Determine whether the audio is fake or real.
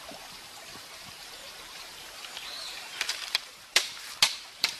fake